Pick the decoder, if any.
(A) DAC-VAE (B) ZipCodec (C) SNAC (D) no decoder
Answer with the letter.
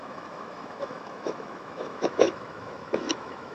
A